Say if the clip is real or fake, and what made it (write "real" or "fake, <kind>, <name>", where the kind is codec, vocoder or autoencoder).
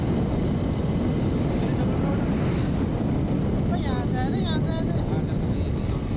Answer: real